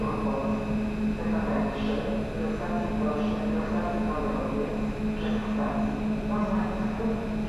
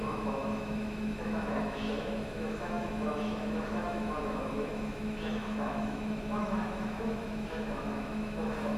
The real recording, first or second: first